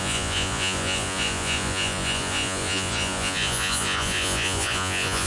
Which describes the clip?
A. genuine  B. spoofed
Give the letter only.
B